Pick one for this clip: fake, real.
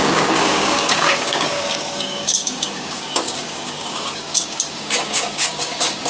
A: fake